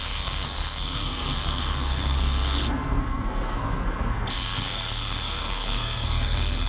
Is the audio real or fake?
fake